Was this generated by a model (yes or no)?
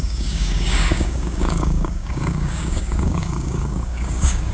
yes